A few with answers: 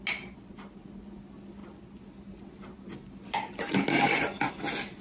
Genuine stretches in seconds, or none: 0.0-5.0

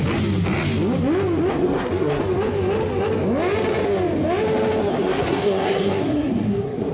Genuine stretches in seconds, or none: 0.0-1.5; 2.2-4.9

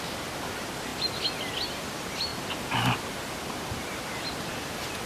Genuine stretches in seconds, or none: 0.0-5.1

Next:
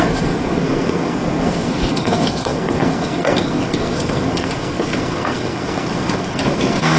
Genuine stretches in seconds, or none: none

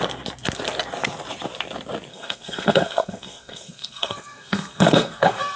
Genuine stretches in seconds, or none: 0.0-2.1

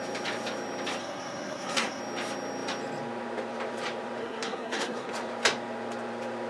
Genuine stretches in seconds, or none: 0.0-1.0; 2.0-4.2; 5.1-6.5

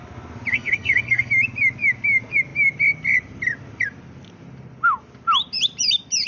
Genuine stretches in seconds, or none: 0.0-0.5; 1.3-6.3